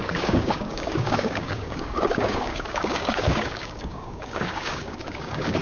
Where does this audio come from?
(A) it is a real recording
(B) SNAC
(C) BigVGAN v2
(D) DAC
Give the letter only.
D